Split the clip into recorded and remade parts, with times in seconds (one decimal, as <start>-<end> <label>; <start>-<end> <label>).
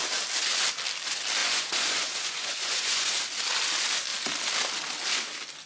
0.0-1.4 recorded; 1.4-3.1 remade; 3.1-5.7 recorded